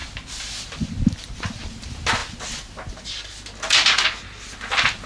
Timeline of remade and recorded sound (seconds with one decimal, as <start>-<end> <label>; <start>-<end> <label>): 0.0-5.1 recorded